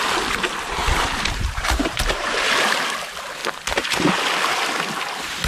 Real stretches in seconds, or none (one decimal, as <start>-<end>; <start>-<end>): 0.0-0.8; 2.5-5.5